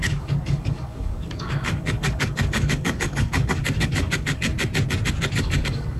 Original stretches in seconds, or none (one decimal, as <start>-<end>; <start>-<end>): 4.5-5.3